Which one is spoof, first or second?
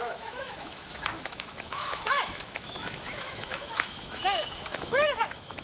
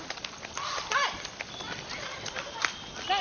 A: first